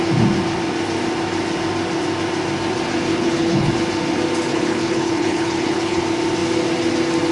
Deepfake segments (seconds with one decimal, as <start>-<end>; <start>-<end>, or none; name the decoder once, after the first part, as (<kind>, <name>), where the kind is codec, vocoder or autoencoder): 3.1-3.7 (codec, HILCodec); 4.5-6.0